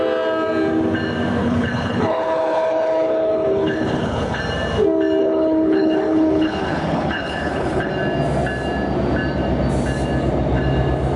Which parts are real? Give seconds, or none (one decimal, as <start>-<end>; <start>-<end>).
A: 0.0-1.4; 4.4-5.2; 7.9-11.2